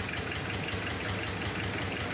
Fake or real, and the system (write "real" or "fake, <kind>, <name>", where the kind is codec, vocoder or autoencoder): real